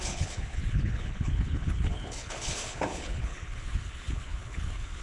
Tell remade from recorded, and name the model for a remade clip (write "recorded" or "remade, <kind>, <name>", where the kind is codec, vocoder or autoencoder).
remade, codec, HILCodec